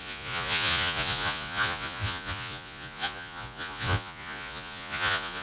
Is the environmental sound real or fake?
fake